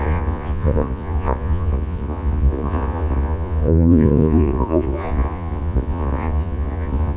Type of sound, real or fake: fake